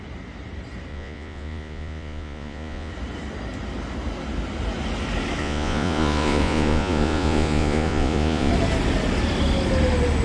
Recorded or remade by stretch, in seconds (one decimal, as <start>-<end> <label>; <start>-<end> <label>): 0.0-0.9 recorded; 0.9-2.9 remade; 2.9-5.4 recorded; 5.4-8.5 remade; 8.5-10.2 recorded